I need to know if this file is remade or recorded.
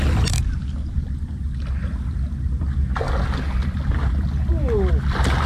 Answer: recorded